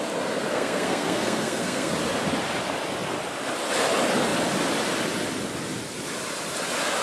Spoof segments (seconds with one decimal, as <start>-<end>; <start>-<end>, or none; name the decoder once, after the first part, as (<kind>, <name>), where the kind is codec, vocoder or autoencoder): 0.5-1.9 (codec, SNAC)